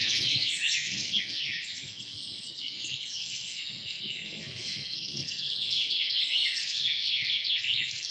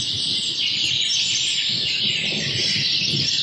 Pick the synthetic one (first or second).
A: first